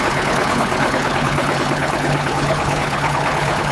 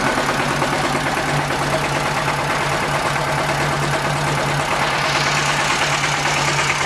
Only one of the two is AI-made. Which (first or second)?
first